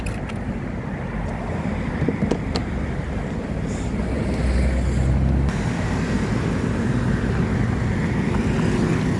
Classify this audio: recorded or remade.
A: recorded